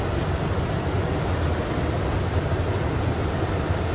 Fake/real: real